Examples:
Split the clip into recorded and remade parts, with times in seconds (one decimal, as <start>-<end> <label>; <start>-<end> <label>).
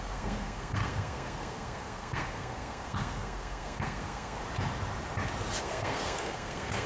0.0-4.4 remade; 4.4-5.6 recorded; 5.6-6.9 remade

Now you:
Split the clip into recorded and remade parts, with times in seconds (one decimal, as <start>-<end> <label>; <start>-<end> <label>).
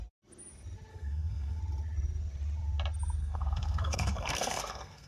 0.0-0.9 recorded; 0.9-1.6 remade; 1.6-3.2 recorded; 3.2-5.1 remade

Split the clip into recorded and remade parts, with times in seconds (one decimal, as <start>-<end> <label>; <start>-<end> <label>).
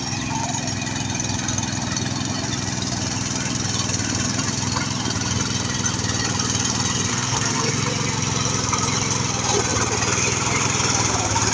0.0-7.1 recorded; 7.1-7.7 remade; 7.7-11.5 recorded